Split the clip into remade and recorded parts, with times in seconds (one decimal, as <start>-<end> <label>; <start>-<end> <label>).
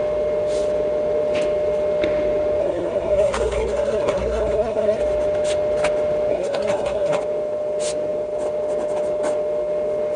0.0-2.6 recorded; 2.6-5.0 remade; 5.0-6.3 recorded; 6.3-7.2 remade; 7.2-10.2 recorded